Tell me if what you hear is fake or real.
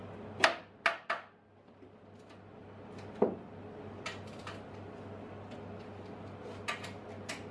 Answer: real